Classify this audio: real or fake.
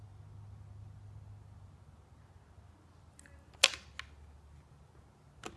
real